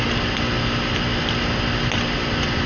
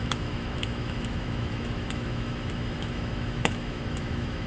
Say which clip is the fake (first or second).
second